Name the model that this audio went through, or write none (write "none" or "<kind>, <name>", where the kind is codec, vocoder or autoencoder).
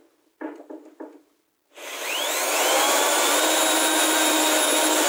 none